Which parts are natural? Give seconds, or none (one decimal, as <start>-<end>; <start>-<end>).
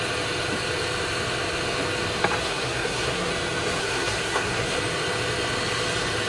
0.0-2.4; 3.3-3.8; 4.8-6.3